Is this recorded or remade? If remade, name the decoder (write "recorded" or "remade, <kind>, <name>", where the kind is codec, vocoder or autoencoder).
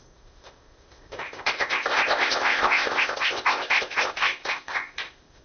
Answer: remade, codec, ZipCodec